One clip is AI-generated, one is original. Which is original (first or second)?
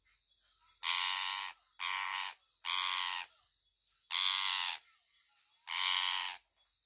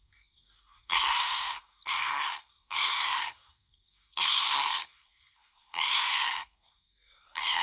first